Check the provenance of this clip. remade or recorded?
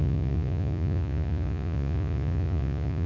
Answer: remade